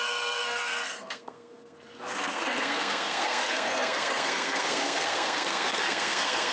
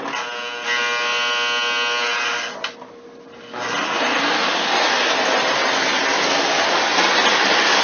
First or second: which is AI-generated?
first